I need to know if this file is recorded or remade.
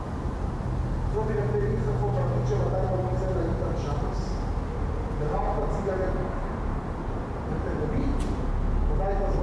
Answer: recorded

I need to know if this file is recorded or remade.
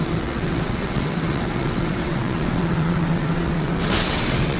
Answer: remade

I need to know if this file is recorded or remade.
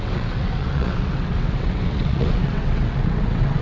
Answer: remade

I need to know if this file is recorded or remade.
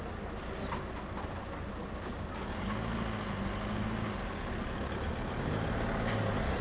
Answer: recorded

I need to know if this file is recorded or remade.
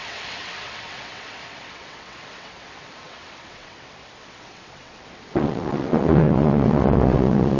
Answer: remade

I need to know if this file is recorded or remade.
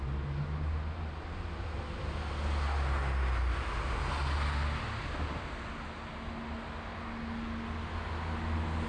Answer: recorded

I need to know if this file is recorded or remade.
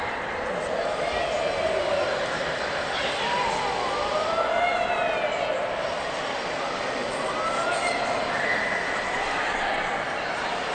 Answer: recorded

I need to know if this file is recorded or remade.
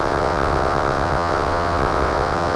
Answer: remade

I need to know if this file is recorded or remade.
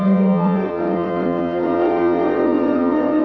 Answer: remade